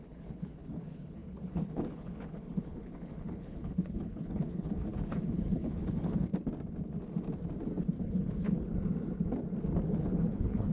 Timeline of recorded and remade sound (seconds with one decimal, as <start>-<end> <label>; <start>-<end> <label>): 0.0-6.3 remade; 6.3-8.0 recorded; 8.0-8.7 remade; 8.7-9.9 recorded; 9.9-10.7 remade